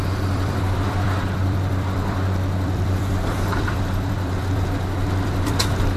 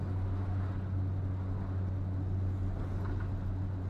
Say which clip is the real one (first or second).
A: second